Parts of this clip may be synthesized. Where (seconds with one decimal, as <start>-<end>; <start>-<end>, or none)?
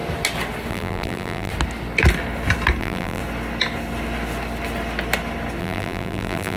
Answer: 0.7-1.5; 2.8-3.2; 5.6-6.6